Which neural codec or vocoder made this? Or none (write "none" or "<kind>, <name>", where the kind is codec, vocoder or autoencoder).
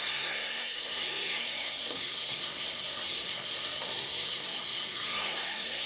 codec, SNAC